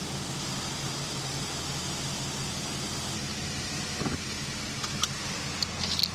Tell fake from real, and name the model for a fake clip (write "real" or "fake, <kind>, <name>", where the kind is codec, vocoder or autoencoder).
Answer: real